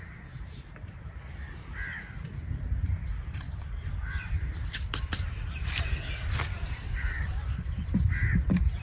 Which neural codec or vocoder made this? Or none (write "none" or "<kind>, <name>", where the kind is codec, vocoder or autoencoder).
vocoder, BigVGAN v2